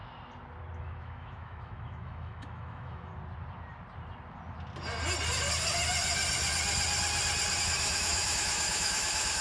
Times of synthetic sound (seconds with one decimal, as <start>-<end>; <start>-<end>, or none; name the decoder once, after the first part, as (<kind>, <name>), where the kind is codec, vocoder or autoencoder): 0.8-3.1 (autoencoder, DAC-VAE); 7.6-9.4